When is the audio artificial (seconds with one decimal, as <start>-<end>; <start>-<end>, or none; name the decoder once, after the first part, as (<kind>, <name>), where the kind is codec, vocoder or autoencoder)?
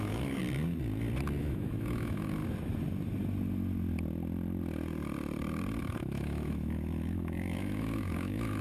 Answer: 0.0-0.4 (autoencoder, DAC-VAE); 1.4-2.4; 5.8-8.6